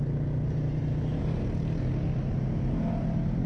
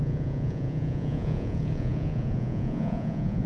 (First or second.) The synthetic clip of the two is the second